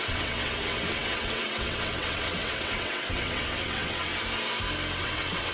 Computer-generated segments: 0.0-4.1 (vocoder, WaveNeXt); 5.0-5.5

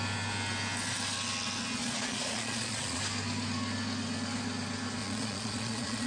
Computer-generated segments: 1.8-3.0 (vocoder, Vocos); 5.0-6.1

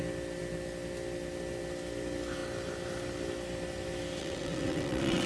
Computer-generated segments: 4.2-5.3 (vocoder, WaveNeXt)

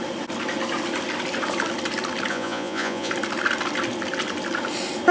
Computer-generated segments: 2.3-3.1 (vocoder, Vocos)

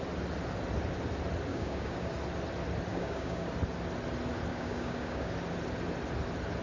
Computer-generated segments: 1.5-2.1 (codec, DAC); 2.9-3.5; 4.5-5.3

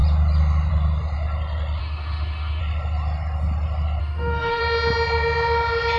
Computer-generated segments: 1.8-2.6 (autoencoder, DAC-VAE); 4.0-4.6

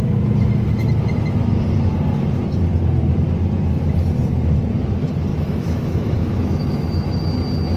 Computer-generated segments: 5.3-7.2 (autoencoder, DAC-VAE)